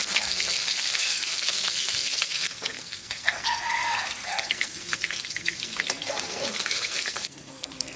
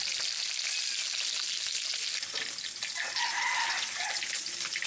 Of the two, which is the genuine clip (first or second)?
second